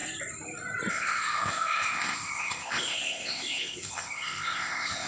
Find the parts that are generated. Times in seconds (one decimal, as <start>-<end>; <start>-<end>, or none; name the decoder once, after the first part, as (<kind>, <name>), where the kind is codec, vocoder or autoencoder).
0.9-5.1 (codec, ZipCodec)